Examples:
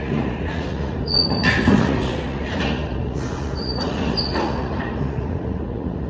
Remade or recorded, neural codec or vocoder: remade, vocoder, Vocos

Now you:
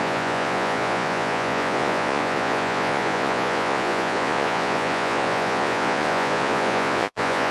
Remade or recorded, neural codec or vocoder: remade, vocoder, Vocos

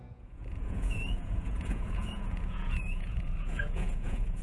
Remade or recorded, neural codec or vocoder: remade, vocoder, Vocos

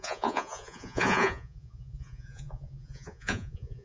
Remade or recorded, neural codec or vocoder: remade, vocoder, Vocos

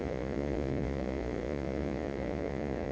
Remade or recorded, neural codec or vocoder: remade, vocoder, Vocos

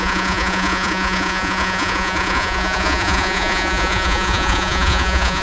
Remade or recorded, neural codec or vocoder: remade, vocoder, Vocos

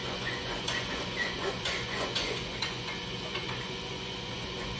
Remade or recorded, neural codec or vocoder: remade, vocoder, Vocos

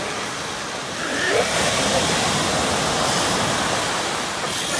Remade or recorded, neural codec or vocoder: recorded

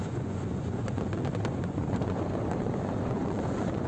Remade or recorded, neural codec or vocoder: remade, vocoder, Vocos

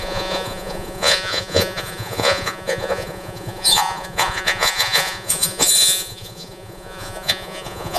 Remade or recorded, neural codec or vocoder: remade, vocoder, Vocos